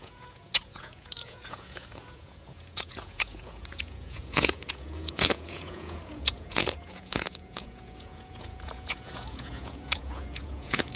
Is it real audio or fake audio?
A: fake